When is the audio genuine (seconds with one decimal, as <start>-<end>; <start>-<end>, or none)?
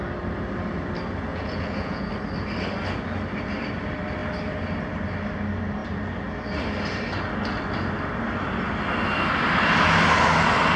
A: 0.0-1.3; 2.1-10.8